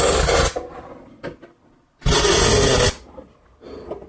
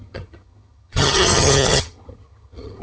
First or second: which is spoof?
second